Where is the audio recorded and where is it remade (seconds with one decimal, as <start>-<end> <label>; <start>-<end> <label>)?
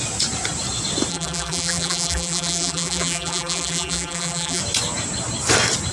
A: 0.0-1.1 recorded; 1.1-4.6 remade; 4.6-5.9 recorded